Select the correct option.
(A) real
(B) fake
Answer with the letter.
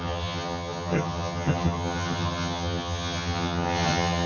B